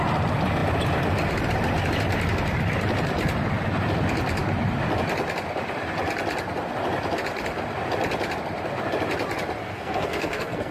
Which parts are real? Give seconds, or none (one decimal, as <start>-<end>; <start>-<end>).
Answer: 0.0-9.6